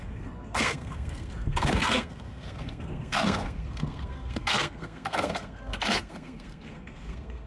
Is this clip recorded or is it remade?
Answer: remade